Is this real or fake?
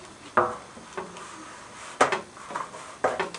real